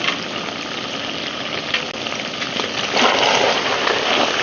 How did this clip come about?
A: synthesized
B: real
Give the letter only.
B